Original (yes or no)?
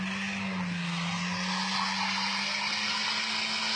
yes